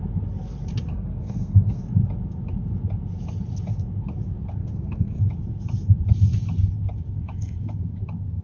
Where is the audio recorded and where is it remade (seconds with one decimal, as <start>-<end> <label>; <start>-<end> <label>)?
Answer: 0.0-0.9 recorded; 0.9-1.8 remade; 1.8-4.6 recorded; 4.6-5.2 remade; 5.2-8.4 recorded